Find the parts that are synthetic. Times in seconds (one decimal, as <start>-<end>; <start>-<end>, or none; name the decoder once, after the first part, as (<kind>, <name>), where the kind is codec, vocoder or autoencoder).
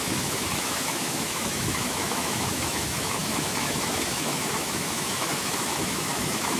0.0-6.6 (autoencoder, DAC-VAE)